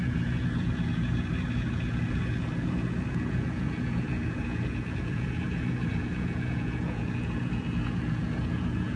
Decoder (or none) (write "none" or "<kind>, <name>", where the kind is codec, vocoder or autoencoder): vocoder, Vocos